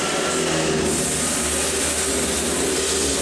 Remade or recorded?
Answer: recorded